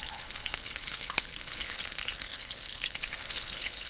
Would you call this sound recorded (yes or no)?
no